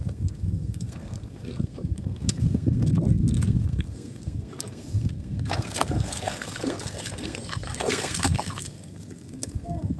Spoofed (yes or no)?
yes